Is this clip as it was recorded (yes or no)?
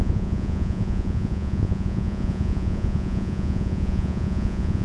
no